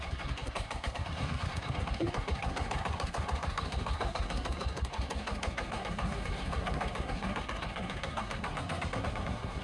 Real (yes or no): no